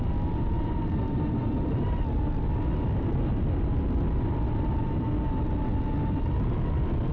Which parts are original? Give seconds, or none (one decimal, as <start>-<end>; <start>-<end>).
0.0-7.1